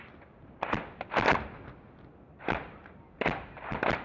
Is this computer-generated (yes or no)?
no